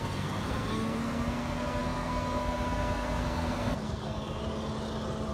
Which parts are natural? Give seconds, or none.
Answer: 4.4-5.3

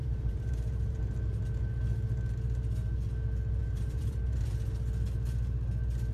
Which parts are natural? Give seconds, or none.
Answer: 1.0-3.6; 4.4-6.1

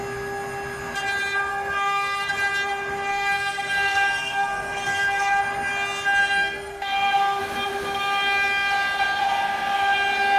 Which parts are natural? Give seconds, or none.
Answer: 0.0-1.5; 2.3-3.1; 5.4-6.2; 7.4-10.4